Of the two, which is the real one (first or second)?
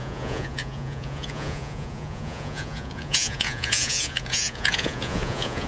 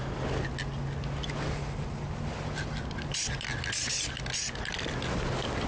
second